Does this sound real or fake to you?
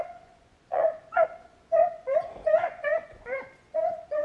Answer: fake